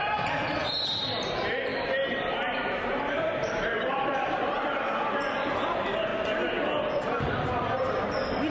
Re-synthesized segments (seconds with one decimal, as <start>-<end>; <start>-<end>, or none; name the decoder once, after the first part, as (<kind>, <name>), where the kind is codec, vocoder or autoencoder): 1.7-4.9 (vocoder, BigVGAN v2)